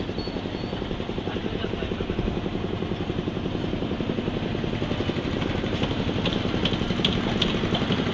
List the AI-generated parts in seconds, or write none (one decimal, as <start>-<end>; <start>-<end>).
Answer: 7.5-8.1

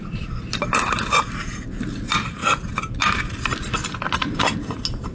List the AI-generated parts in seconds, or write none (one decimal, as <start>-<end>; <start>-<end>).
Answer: none